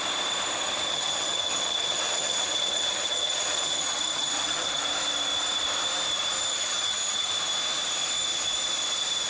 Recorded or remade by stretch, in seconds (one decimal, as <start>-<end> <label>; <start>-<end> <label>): 0.0-0.9 recorded; 0.9-4.8 remade; 4.8-6.5 recorded; 6.5-7.3 remade; 7.3-9.3 recorded